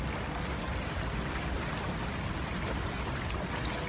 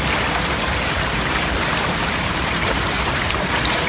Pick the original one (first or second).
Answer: first